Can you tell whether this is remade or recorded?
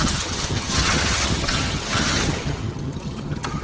remade